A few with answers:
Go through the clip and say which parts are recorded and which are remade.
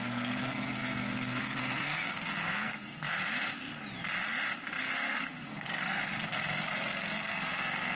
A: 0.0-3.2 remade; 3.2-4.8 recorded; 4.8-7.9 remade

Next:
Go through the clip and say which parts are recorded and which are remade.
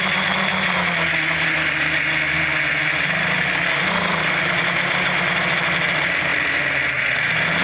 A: 0.0-7.6 recorded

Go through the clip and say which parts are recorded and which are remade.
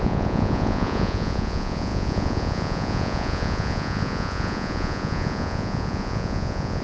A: 0.0-6.8 remade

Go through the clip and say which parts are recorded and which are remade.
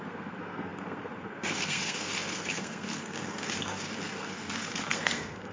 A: 0.0-5.5 remade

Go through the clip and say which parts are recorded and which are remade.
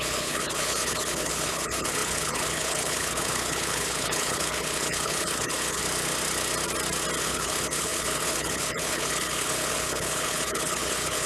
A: 0.0-5.8 remade; 5.8-7.2 recorded; 7.2-11.3 remade